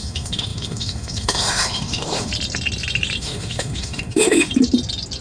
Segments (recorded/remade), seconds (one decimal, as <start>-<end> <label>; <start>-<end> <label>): 0.0-2.3 remade; 2.3-3.2 recorded; 3.2-4.5 remade; 4.5-5.2 recorded